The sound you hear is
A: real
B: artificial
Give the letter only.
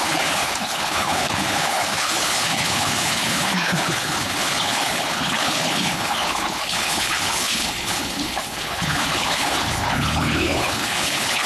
B